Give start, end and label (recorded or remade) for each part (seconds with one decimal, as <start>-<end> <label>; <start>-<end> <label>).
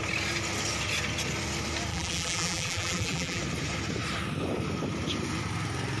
0.0-1.9 recorded; 1.9-3.4 remade; 3.4-6.0 recorded